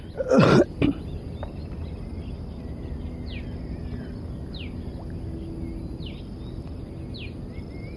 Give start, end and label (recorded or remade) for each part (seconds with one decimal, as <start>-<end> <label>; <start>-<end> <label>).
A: 0.0-8.0 recorded